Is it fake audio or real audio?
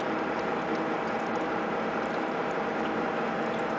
real